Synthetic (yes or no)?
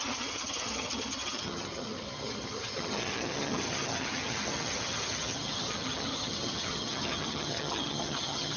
yes